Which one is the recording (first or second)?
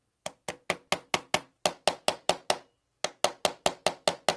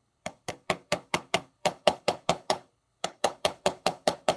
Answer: first